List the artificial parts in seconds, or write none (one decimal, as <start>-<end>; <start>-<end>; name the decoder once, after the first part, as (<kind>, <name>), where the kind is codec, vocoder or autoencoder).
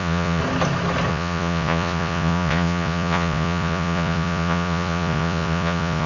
0.0-0.4 (vocoder, Vocos); 1.1-6.1